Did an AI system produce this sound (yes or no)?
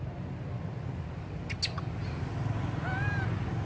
no